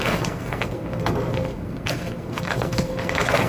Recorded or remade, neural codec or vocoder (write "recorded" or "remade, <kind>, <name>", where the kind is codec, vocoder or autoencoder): remade, codec, SNAC